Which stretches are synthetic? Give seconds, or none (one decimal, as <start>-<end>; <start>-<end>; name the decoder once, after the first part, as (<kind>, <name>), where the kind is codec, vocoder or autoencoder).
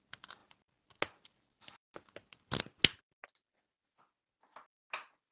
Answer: none